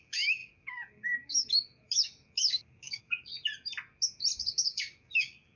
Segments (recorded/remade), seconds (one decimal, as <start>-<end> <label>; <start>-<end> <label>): 0.0-3.5 remade; 3.5-4.4 recorded; 4.4-5.6 remade